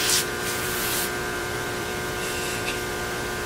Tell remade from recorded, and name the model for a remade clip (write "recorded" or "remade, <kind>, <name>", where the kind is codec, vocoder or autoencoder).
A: remade, vocoder, BigVGAN v2